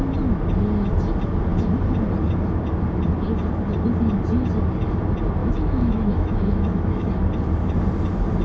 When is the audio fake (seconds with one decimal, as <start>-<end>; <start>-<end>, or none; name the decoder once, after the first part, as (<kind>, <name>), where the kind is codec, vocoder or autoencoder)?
5.4-7.1 (autoencoder, DAC-VAE)